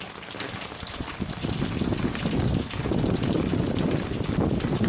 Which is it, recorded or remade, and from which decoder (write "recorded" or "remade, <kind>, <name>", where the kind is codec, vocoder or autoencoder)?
recorded